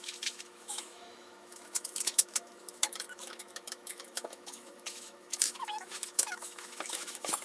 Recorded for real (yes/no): no